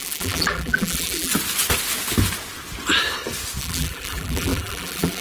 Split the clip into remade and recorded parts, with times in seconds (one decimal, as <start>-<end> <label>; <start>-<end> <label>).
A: 0.0-1.3 remade; 1.3-3.6 recorded; 3.6-5.2 remade